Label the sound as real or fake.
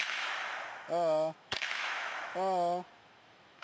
fake